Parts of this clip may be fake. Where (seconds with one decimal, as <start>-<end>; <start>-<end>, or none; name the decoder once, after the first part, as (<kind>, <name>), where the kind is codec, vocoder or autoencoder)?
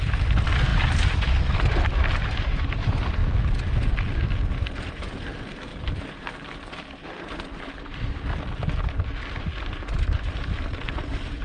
0.0-3.2 (vocoder, BigVGAN v2); 4.9-11.4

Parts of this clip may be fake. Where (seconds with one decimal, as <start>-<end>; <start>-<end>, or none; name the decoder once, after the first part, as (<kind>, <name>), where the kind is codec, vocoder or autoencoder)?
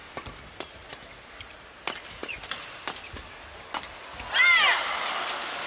0.0-0.9 (vocoder, BigVGAN v2)